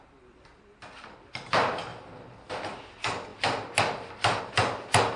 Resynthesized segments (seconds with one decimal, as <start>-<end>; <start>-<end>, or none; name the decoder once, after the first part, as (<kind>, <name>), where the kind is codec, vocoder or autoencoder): none